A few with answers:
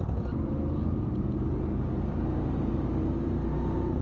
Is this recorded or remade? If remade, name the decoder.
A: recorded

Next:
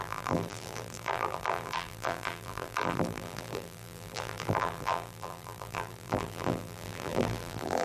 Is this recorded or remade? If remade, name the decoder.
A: remade, vocoder, BigVGAN v2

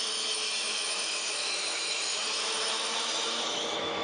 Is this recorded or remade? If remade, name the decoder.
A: remade, autoencoder, DAC-VAE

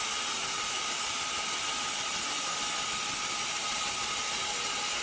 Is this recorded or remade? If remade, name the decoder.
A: recorded